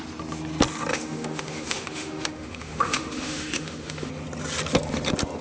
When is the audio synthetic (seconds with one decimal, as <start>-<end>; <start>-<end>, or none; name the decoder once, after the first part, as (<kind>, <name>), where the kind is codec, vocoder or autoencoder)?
0.9-4.1 (autoencoder, DAC-VAE)